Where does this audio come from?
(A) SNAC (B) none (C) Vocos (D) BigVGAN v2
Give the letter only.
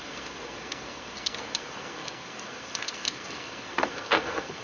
A